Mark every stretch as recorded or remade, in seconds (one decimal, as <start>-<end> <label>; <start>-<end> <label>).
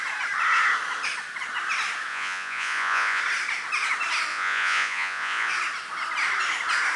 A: 0.0-2.1 recorded; 2.1-3.2 remade; 3.2-4.3 recorded; 4.3-5.5 remade; 5.5-7.0 recorded